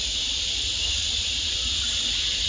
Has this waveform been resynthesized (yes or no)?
no